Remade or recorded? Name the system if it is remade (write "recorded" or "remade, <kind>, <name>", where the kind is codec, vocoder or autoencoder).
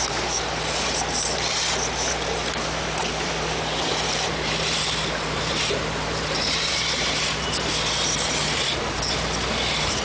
remade, vocoder, BigVGAN v2